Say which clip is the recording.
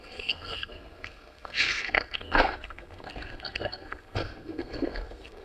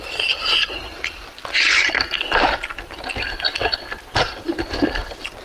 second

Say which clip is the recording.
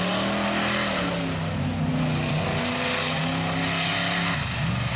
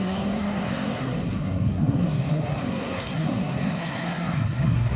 first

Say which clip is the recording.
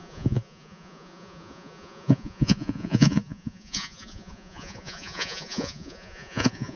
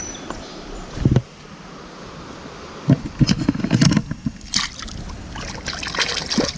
second